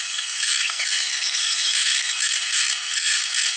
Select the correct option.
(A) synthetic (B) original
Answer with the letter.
A